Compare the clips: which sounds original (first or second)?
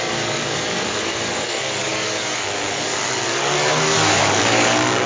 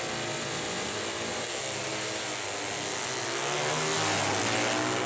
second